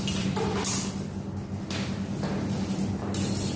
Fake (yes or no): no